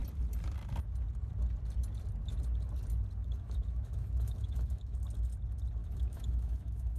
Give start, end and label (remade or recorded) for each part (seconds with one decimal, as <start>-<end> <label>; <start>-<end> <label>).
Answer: 0.0-3.2 recorded; 3.2-5.0 remade; 5.0-5.8 recorded; 5.8-7.0 remade